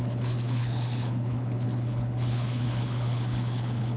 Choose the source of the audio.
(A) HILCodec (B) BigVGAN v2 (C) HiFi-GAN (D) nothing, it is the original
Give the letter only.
A